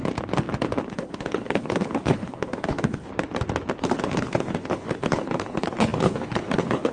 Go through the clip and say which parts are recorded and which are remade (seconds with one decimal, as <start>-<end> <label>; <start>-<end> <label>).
0.0-0.9 recorded; 0.9-3.1 remade; 3.1-3.8 recorded; 3.8-6.9 remade